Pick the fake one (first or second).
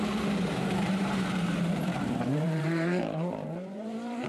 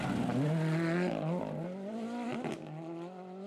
first